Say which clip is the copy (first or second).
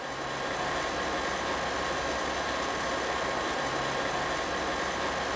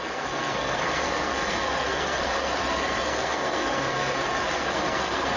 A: second